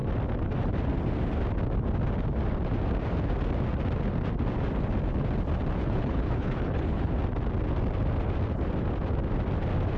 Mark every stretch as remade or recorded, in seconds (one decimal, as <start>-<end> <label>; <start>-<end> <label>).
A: 0.0-5.8 recorded; 5.8-7.1 remade; 7.1-10.0 recorded

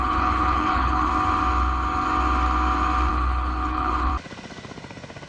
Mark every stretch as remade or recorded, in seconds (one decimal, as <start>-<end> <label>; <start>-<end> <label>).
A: 0.0-1.1 remade; 1.1-3.1 recorded; 3.1-4.1 remade; 4.1-5.3 recorded

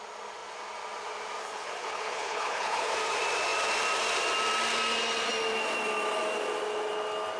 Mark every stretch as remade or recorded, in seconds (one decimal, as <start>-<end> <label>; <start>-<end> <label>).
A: 0.0-1.4 recorded; 1.4-2.9 remade; 2.9-7.4 recorded

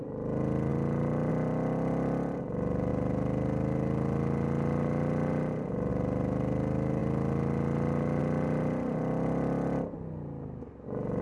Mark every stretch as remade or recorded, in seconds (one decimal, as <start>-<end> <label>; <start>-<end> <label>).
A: 0.0-11.2 recorded

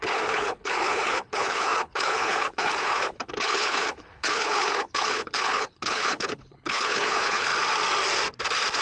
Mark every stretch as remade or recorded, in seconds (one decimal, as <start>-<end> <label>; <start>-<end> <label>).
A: 0.0-7.5 remade; 7.5-8.8 recorded

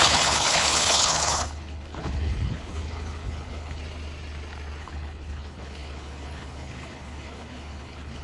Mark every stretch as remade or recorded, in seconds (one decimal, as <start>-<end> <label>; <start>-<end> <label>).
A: 0.0-3.8 remade; 3.8-4.8 recorded; 4.8-8.2 remade